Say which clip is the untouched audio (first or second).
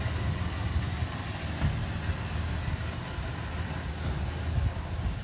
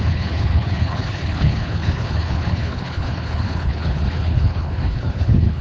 first